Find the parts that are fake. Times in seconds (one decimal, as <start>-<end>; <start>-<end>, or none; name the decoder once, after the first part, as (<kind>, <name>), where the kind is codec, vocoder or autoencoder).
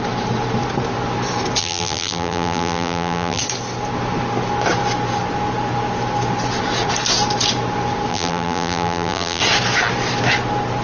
1.6-3.4 (vocoder, BigVGAN v2); 8.1-9.4